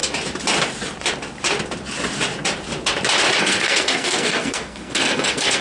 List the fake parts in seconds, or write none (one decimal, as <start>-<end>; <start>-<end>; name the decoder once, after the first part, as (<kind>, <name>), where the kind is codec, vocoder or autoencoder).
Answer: 3.4-5.6 (codec, SNAC)